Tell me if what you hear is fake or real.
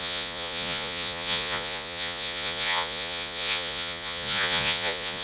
fake